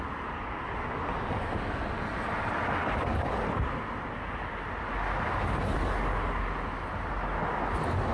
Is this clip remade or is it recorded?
recorded